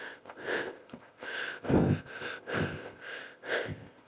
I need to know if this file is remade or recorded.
remade